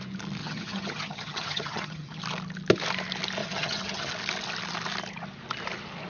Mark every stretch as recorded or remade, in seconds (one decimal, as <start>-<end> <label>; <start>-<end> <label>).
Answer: 0.0-0.4 recorded; 0.4-2.2 remade; 2.2-3.4 recorded; 3.4-4.1 remade; 4.1-6.1 recorded